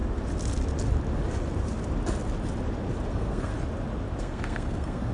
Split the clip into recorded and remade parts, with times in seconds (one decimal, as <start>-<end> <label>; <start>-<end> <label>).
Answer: 0.0-3.1 recorded; 3.1-3.5 remade; 3.5-4.2 recorded; 4.2-5.1 remade